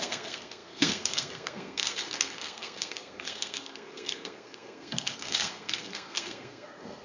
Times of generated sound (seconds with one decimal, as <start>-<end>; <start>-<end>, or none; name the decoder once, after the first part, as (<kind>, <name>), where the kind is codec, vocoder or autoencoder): 0.0-7.0 (codec, SNAC)